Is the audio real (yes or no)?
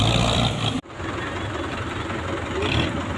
no